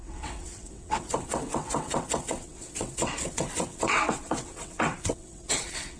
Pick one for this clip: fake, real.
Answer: fake